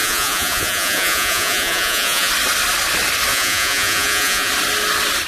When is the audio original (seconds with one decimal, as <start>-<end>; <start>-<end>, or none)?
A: 2.3-3.3; 4.5-5.3